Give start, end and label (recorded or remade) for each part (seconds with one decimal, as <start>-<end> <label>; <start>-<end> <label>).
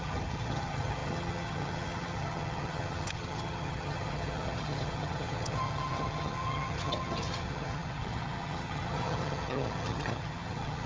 0.0-10.9 remade